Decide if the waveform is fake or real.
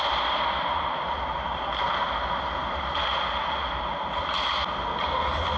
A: real